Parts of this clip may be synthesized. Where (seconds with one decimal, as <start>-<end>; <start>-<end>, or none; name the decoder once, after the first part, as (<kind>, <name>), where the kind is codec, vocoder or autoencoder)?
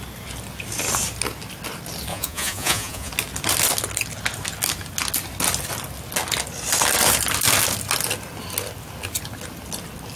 2.1-3.1 (vocoder, Vocos)